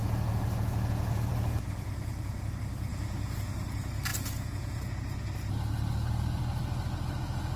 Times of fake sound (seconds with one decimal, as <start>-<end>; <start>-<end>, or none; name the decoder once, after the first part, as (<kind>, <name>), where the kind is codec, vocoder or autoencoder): 0.0-2.5 (vocoder, Vocos); 2.9-3.5; 4.1-4.9